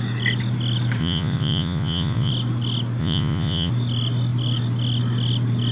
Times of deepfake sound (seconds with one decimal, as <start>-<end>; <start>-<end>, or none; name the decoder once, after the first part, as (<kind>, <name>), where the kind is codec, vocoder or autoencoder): 1.0-2.3 (vocoder, Vocos); 3.0-3.7